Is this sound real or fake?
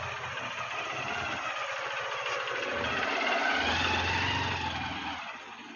real